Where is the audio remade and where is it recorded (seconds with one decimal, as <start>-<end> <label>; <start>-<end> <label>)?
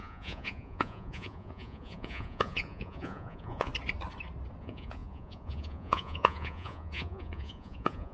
0.0-3.7 remade; 3.7-4.6 recorded; 4.6-8.1 remade